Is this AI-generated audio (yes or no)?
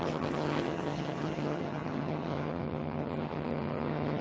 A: yes